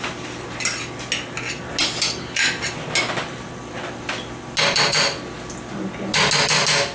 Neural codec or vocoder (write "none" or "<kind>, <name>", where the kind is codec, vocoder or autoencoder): none